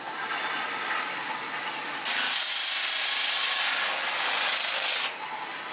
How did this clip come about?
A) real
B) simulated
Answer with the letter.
A